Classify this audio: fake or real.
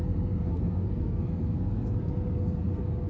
fake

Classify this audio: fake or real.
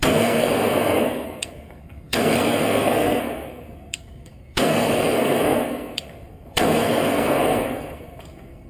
fake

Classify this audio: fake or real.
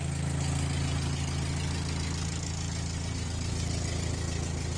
real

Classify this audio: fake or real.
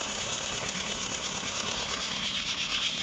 fake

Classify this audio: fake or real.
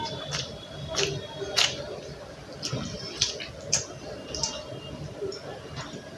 real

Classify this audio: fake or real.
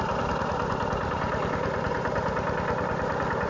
real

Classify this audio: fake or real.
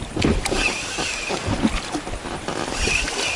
real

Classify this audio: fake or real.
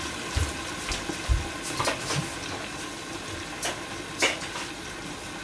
real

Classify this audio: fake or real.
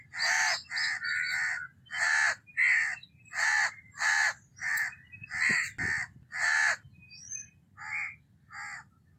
real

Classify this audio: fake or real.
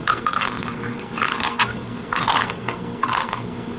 fake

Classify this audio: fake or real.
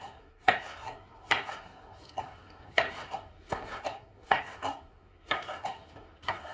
fake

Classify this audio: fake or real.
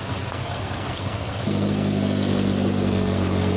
fake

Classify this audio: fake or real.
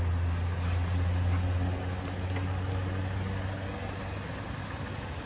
real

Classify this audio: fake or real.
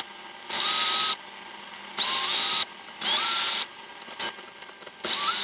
real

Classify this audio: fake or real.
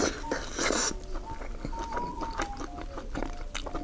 real